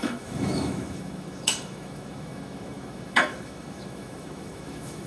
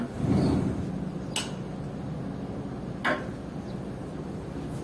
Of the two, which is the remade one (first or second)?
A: first